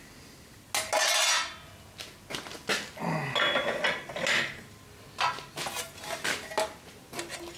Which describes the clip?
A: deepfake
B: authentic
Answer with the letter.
B